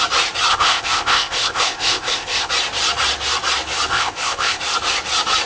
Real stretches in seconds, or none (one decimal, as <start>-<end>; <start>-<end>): 0.0-0.5; 2.5-3.9; 4.6-5.5